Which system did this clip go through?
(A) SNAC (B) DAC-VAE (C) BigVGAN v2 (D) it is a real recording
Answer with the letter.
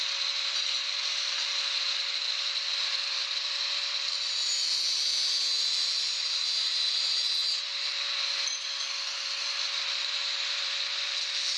C